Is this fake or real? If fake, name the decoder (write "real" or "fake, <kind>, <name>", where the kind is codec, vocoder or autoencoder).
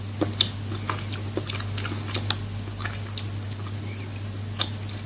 real